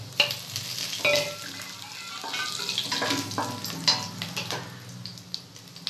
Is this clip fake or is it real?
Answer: real